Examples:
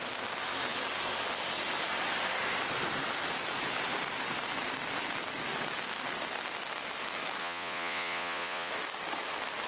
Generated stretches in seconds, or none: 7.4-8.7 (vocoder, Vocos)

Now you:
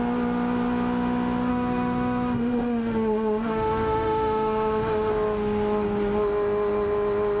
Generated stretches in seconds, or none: 1.5-5.1 (autoencoder, DAC-VAE)